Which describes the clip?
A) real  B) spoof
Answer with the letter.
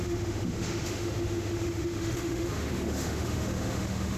B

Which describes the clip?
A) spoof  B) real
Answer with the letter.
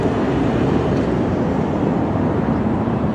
A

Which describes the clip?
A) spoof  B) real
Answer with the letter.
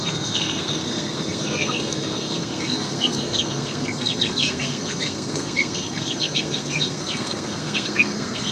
A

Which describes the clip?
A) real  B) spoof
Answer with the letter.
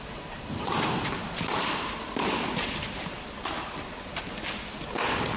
A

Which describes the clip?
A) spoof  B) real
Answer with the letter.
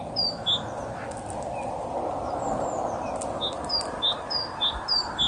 B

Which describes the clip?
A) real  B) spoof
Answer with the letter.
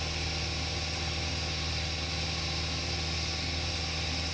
A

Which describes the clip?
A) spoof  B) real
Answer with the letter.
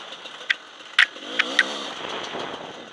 B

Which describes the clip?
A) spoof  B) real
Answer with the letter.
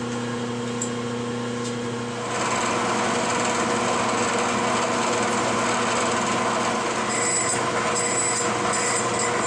B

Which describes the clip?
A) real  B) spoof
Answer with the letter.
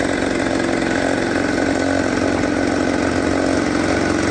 A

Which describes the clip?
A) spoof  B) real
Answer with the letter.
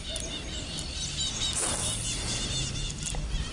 B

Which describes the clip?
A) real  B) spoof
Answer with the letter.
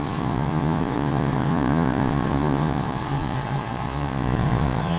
B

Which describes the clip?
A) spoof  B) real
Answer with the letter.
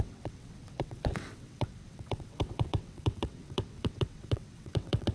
A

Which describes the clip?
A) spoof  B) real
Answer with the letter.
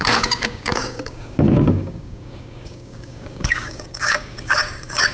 A